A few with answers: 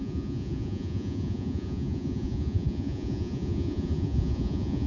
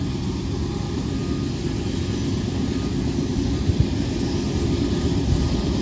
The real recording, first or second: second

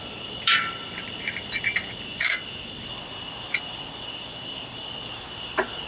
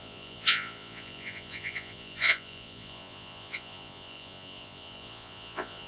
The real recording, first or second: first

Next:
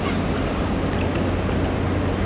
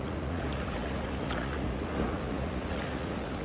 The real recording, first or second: first